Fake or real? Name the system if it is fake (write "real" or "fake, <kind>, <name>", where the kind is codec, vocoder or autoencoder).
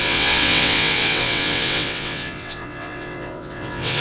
fake, vocoder, WaveNeXt